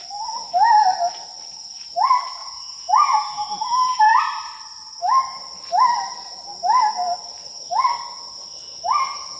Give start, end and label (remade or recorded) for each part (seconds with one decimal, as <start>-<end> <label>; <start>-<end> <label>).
0.0-2.4 recorded; 2.4-4.2 remade; 4.2-9.4 recorded